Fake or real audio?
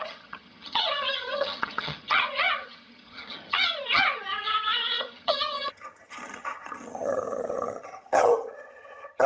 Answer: fake